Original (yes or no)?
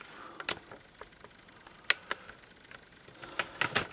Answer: yes